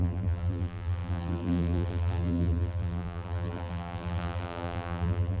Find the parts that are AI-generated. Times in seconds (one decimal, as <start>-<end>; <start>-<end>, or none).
0.0-5.4